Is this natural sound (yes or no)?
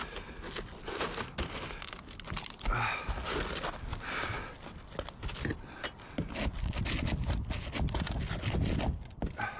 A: yes